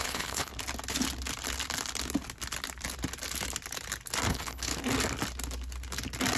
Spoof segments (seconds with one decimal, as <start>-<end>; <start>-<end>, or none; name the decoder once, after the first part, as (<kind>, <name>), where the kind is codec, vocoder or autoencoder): 0.0-0.5 (codec, HILCodec); 4.3-4.7